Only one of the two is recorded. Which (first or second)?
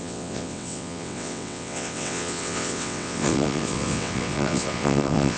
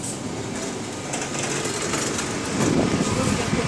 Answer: second